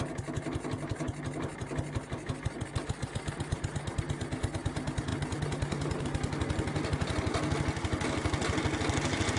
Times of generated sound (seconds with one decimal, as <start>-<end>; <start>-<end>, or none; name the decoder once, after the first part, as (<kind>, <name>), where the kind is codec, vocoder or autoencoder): none